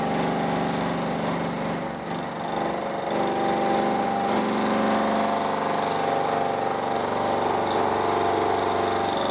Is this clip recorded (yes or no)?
yes